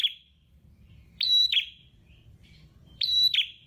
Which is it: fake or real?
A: fake